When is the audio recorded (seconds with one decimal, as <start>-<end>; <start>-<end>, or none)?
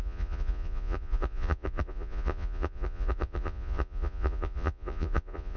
none